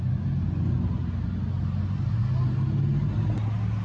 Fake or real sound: real